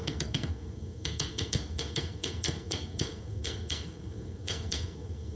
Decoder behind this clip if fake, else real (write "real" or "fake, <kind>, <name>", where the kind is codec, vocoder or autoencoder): fake, codec, SNAC